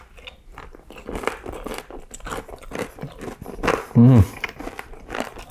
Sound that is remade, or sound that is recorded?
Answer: recorded